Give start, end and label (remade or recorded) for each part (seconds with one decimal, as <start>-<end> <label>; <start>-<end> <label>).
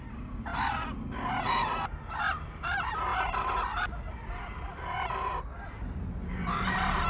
0.0-7.1 recorded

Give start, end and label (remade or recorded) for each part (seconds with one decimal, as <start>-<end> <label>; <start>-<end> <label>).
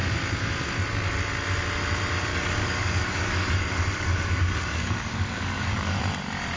0.0-2.3 recorded; 2.3-6.0 remade; 6.0-6.6 recorded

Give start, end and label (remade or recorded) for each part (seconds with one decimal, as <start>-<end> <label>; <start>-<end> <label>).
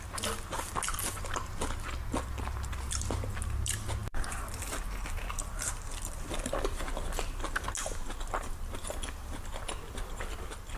0.0-10.8 recorded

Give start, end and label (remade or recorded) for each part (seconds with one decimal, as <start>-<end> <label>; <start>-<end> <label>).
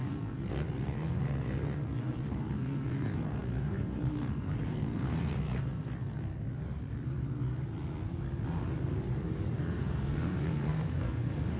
0.0-6.3 remade; 6.3-9.6 recorded; 9.6-11.6 remade